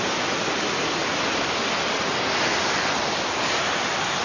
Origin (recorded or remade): recorded